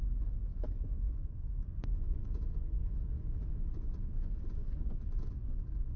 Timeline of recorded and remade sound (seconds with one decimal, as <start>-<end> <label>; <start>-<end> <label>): 0.0-0.5 recorded; 0.5-3.0 remade; 3.0-4.6 recorded; 4.6-5.4 remade; 5.4-6.0 recorded